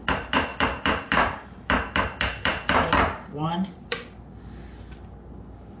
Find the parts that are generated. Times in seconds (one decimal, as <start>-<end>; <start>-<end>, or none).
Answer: 0.5-4.0